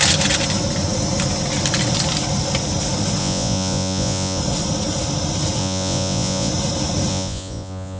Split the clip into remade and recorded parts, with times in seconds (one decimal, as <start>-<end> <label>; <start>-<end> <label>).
0.0-3.2 recorded; 3.2-4.4 remade; 4.4-5.6 recorded; 5.6-6.5 remade; 6.5-7.1 recorded; 7.1-8.0 remade